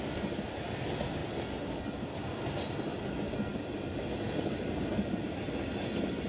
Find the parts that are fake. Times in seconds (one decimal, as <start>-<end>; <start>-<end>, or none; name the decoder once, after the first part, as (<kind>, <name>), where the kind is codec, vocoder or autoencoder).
none